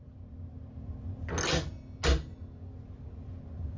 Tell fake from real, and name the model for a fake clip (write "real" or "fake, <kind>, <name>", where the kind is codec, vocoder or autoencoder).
real